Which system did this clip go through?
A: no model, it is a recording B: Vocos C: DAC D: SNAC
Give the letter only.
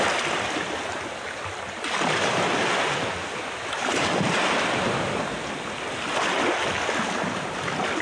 A